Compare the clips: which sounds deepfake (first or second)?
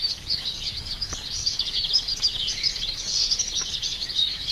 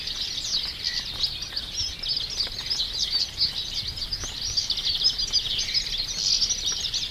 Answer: first